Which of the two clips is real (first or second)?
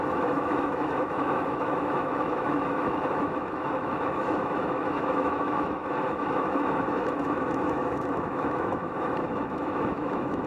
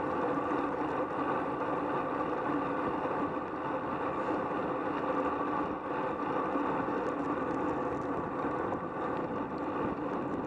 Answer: second